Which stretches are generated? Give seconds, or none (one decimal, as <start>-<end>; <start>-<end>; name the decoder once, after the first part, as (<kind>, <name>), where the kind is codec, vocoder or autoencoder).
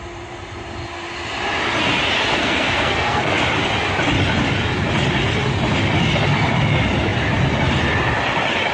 2.4-3.4 (codec, SNAC)